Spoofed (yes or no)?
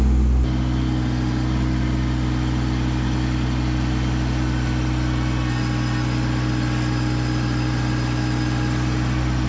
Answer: no